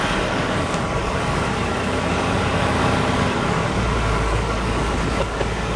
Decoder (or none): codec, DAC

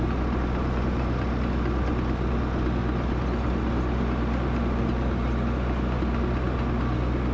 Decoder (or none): none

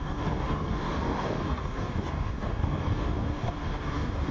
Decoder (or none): codec, DAC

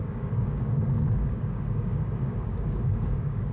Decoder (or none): codec, DAC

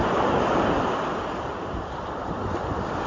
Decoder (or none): none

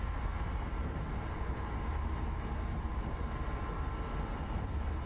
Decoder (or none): none